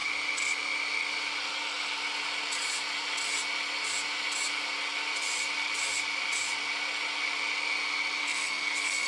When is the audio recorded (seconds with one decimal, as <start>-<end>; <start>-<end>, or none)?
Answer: 0.0-8.2